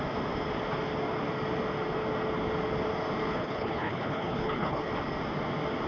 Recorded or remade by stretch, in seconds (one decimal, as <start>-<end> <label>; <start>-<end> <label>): 0.0-3.2 recorded; 3.2-4.9 remade; 4.9-5.9 recorded